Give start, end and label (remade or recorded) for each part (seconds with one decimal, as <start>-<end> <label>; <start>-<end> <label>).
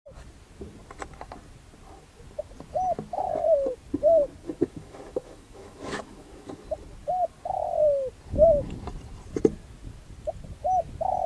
0.0-4.4 recorded; 4.4-6.5 remade; 6.5-11.3 recorded